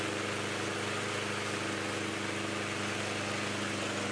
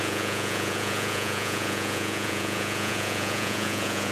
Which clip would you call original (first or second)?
first